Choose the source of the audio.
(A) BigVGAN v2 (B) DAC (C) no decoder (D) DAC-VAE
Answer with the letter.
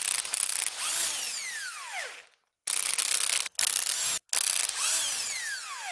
C